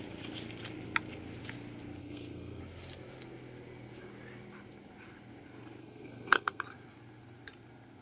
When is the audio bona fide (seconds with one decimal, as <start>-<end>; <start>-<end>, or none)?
0.0-2.0; 2.6-5.8; 6.6-8.0

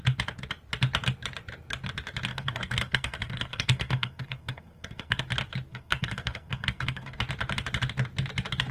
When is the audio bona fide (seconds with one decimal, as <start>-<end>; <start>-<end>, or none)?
0.0-2.3; 5.2-5.7; 7.2-8.7

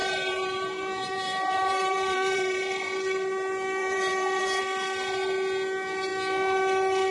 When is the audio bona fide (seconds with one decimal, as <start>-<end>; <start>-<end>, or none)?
2.6-3.8; 4.6-7.1

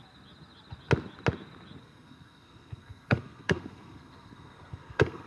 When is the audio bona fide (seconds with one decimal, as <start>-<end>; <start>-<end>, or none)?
0.0-1.8

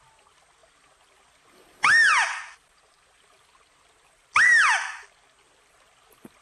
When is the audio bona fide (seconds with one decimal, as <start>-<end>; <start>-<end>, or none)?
0.0-6.4